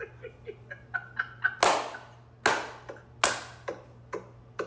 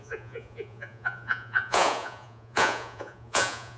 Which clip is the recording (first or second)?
first